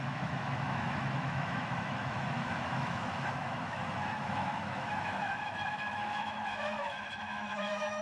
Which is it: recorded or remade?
remade